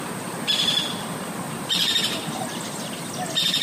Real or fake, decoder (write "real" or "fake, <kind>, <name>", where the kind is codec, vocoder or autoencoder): real